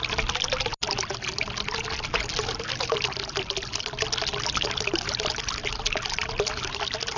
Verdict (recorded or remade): recorded